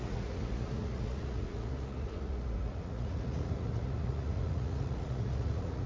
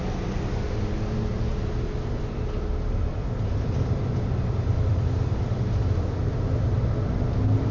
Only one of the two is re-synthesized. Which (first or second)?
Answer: first